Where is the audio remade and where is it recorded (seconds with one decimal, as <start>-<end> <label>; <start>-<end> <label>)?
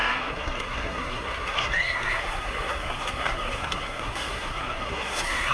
0.0-5.5 remade